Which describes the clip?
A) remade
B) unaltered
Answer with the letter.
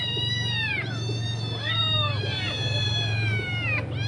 A